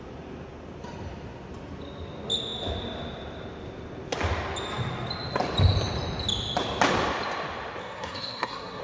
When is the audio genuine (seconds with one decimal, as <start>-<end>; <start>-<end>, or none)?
0.0-7.8